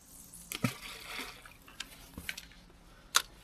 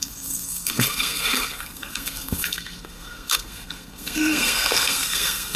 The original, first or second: first